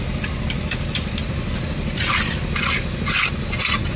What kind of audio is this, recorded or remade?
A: recorded